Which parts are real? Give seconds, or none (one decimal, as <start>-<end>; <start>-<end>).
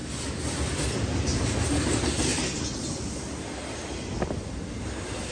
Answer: 0.0-5.3